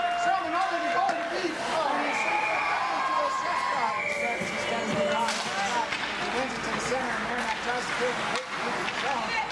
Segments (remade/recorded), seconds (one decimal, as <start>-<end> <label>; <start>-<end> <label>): 0.0-9.5 recorded